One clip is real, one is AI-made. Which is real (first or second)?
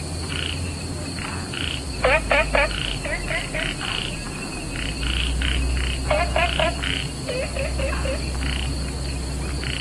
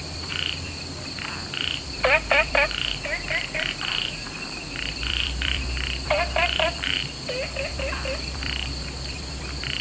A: first